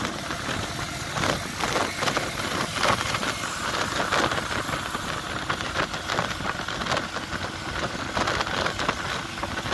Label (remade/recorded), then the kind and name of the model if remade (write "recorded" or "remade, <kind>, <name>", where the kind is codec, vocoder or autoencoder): recorded